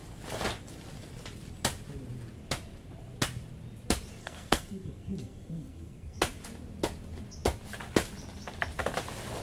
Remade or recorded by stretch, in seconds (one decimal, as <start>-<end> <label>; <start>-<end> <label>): 0.0-4.2 recorded; 4.2-6.2 remade; 6.2-9.4 recorded